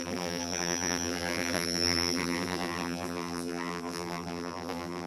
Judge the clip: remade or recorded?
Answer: remade